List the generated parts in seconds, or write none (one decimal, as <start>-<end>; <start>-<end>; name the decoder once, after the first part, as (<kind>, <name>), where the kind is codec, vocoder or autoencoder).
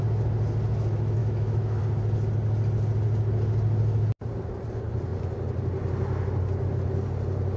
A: 1.2-1.8 (autoencoder, DAC-VAE)